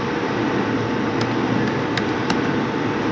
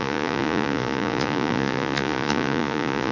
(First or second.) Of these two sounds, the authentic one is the first